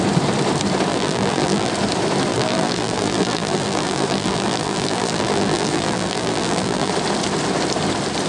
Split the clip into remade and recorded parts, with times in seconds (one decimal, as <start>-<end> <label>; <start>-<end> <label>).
0.0-0.9 recorded; 0.9-1.7 remade; 1.7-2.3 recorded; 2.3-6.9 remade; 6.9-8.3 recorded